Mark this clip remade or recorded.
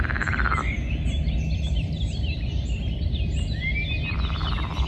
recorded